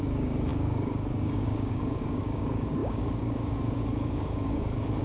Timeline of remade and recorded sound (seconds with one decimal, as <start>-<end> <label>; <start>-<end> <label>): 0.0-5.0 remade